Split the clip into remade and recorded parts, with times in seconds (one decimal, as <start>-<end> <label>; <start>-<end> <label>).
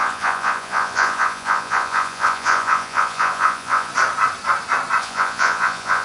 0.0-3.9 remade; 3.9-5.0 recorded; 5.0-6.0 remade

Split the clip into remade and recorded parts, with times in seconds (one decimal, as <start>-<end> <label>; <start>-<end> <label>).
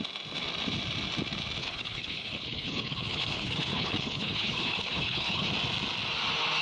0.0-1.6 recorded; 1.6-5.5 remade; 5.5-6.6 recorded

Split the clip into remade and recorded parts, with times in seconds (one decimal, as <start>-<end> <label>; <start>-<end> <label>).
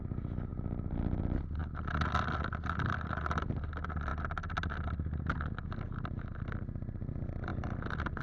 0.0-8.2 recorded